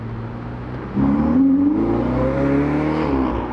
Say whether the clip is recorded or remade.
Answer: recorded